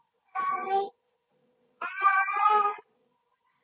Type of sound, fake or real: fake